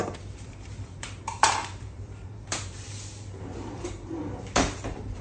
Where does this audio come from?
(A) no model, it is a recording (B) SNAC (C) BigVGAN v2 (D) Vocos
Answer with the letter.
C